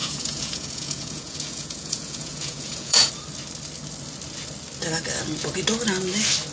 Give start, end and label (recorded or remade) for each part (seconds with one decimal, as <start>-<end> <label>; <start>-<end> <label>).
0.0-3.1 remade; 3.1-6.5 recorded